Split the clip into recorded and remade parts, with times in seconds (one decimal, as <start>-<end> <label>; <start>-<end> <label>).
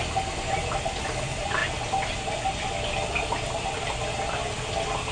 0.0-5.1 recorded